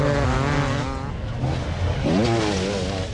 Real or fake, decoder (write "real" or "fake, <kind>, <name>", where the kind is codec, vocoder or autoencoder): real